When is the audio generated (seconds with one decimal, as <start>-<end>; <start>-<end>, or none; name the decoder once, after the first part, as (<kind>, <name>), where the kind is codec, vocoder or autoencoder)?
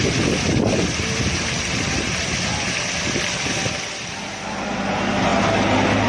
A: none